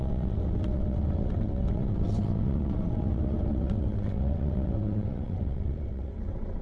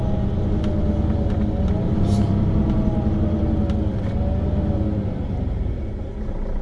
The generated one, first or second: first